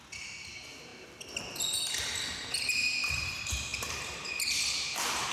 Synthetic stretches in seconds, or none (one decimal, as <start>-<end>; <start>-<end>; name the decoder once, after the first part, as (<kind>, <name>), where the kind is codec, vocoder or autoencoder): none